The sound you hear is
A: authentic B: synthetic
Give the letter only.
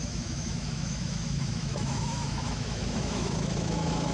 B